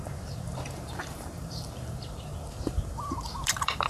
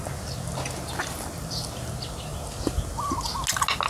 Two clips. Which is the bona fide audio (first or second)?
second